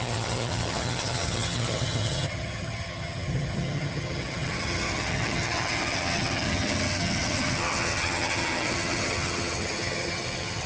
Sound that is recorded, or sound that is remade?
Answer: remade